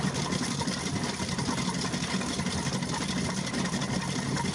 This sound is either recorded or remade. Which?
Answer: recorded